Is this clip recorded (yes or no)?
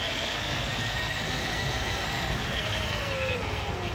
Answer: no